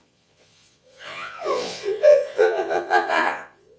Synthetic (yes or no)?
yes